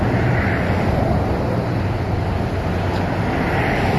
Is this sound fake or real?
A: real